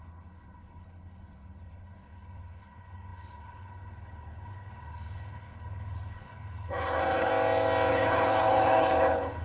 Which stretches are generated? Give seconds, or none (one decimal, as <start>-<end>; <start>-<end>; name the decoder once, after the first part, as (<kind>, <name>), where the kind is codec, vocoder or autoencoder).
0.0-7.3 (codec, HILCodec); 7.9-9.4